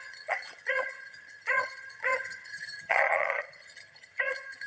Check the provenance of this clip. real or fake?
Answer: fake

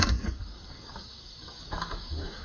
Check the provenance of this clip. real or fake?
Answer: fake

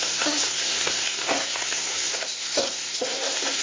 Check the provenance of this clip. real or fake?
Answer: fake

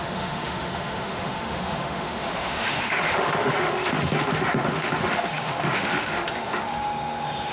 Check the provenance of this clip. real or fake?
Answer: fake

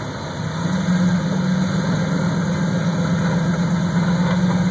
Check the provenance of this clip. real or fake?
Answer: real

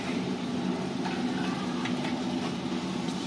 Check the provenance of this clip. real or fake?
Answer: real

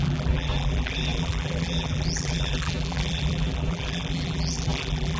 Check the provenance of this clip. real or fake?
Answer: fake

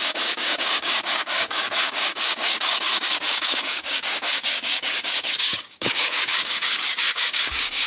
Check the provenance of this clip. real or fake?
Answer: fake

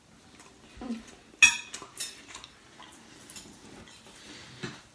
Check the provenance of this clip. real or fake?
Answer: real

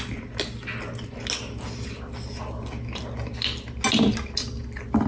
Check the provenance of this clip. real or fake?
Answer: real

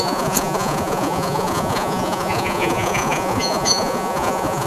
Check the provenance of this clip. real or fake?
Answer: fake